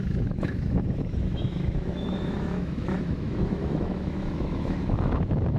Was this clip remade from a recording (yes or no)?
yes